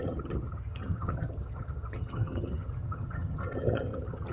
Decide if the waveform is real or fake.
fake